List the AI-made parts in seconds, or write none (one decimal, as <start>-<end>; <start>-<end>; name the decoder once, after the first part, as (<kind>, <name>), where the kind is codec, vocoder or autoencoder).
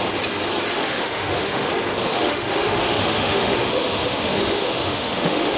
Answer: 0.7-1.7 (autoencoder, DAC-VAE); 2.1-5.6